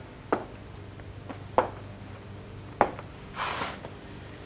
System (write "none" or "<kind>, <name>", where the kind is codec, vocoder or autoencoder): none